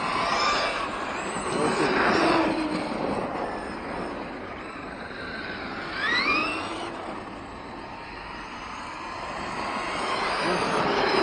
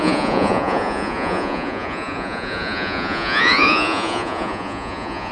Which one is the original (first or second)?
first